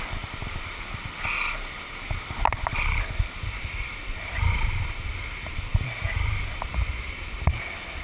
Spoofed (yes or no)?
no